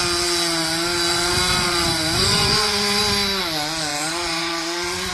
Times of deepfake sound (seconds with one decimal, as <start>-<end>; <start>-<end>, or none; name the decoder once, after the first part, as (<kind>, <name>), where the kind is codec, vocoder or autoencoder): 1.1-3.0 (vocoder, Vocos); 3.9-5.1